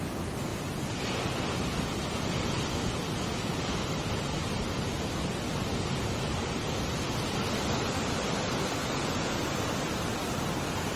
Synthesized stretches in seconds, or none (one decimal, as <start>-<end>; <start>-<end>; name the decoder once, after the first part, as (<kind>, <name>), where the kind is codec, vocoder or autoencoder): 8.8-9.5 (vocoder, Vocos)